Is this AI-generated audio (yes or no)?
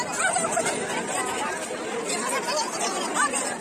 no